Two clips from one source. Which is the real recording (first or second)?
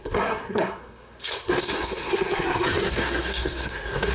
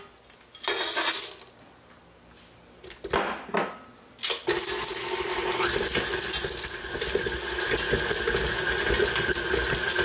second